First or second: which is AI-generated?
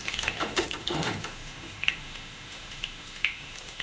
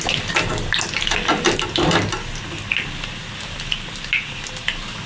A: first